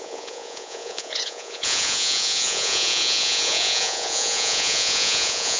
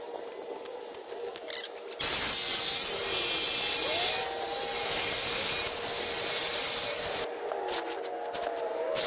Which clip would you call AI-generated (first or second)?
first